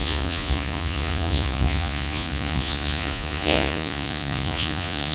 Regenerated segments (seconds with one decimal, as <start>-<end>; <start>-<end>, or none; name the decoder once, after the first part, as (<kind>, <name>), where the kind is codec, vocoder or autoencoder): 0.0-5.1 (vocoder, Vocos)